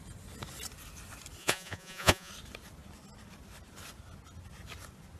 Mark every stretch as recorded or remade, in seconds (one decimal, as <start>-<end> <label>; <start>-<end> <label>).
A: 0.0-1.4 recorded; 1.4-2.3 remade; 2.3-5.2 recorded